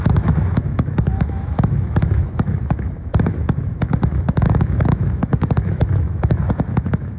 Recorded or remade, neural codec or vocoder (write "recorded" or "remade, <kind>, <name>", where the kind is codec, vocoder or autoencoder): remade, autoencoder, DAC-VAE